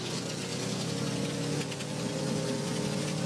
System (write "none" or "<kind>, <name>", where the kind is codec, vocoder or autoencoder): vocoder, Vocos